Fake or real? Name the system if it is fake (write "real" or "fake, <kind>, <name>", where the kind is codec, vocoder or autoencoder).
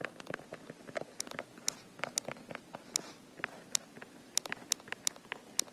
real